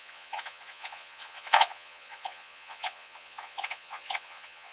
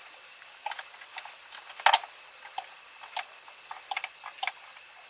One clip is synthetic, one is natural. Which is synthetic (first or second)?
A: first